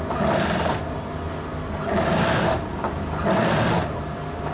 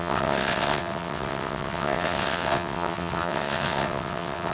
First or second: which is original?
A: first